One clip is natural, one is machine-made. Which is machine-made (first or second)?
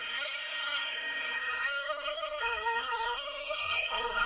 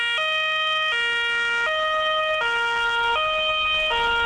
first